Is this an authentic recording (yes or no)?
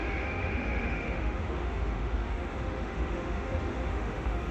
no